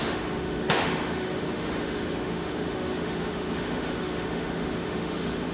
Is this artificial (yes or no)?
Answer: yes